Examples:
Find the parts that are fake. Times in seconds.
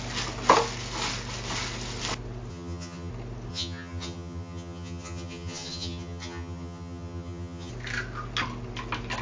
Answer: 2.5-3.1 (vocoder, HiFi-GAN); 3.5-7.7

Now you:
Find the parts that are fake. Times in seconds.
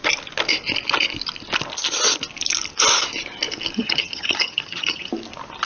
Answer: 3.8-5.1 (vocoder, HiFi-GAN)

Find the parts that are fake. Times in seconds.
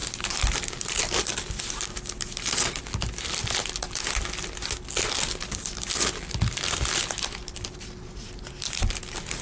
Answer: none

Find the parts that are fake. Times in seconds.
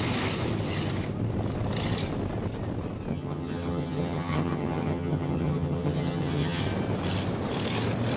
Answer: 3.1-6.6 (vocoder, HiFi-GAN)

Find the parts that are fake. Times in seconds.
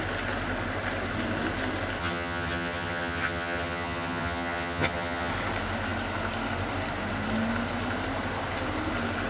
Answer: 2.0-5.3 (vocoder, HiFi-GAN)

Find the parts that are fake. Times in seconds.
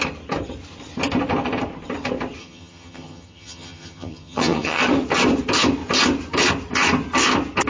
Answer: 2.4-4.8 (vocoder, HiFi-GAN)